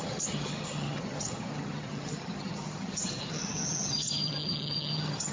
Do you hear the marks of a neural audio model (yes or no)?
yes